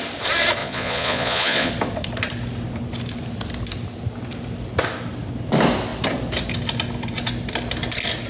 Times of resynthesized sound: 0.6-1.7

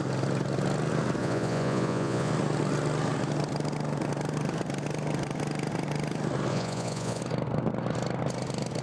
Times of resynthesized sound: 1.2-2.3; 6.5-7.2

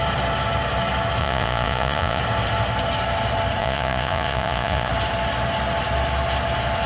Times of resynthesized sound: 1.2-2.2; 3.6-4.9

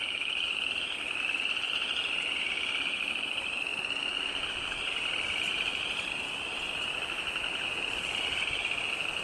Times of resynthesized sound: none

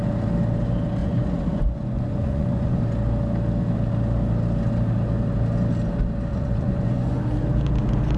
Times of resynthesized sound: 1.0-2.8; 6.3-7.2